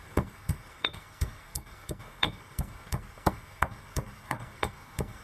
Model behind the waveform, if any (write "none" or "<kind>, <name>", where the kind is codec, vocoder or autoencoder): codec, SNAC